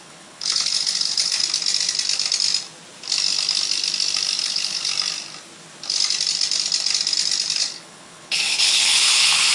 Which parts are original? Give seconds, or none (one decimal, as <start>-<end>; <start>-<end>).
1.4-4.4; 4.9-7.6